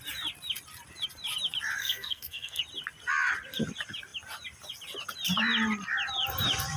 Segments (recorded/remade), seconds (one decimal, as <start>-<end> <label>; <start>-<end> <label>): 0.0-1.8 recorded; 1.8-2.6 remade; 2.6-6.8 recorded